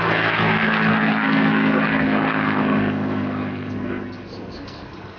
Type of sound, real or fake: fake